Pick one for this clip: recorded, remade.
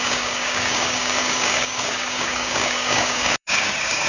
remade